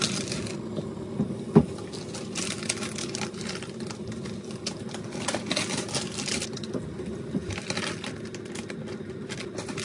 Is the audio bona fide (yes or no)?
yes